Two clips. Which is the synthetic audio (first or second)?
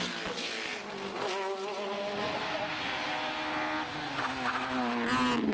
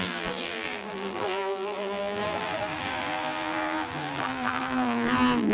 second